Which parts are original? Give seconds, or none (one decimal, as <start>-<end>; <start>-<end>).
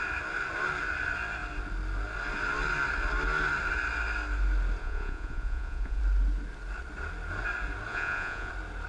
0.0-4.8; 6.0-7.9; 8.5-8.9